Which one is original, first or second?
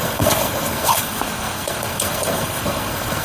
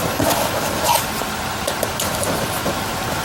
second